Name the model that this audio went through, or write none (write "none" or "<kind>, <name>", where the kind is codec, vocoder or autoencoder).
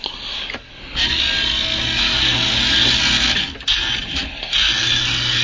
none